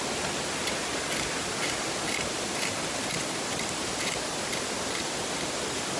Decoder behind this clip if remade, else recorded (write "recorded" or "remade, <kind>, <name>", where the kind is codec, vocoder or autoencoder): remade, vocoder, BigVGAN v2